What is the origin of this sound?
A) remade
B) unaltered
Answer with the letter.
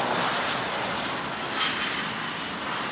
B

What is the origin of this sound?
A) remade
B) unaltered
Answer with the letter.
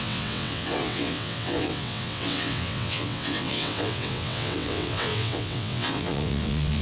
A